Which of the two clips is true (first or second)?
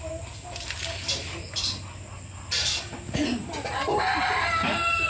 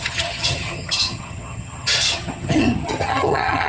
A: first